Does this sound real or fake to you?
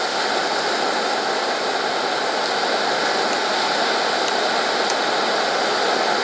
real